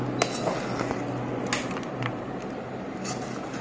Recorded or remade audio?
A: recorded